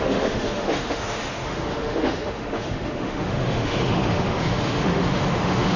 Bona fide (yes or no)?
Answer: no